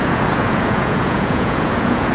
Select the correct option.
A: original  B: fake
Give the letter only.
B